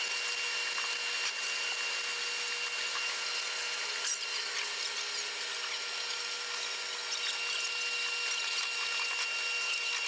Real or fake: real